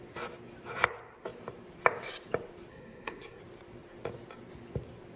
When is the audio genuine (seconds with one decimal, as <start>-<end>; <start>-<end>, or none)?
0.0-2.7; 3.4-5.2